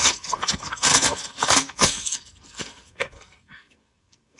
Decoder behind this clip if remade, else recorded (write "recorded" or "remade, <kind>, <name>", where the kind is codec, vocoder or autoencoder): remade, codec, SNAC